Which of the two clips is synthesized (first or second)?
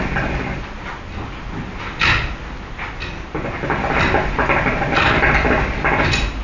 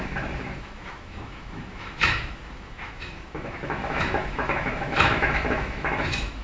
second